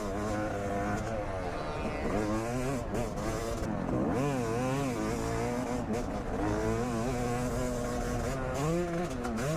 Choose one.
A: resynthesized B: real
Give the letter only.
B